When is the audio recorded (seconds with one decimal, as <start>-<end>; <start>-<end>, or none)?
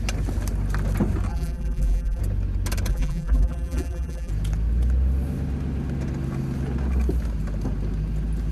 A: 0.0-1.3; 2.2-2.9; 4.3-8.5